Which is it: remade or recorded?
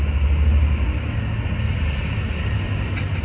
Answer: recorded